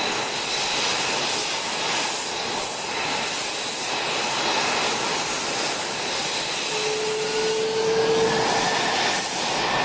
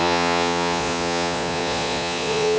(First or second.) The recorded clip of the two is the first